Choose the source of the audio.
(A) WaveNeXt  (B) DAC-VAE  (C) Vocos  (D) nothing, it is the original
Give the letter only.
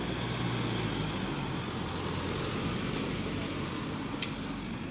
D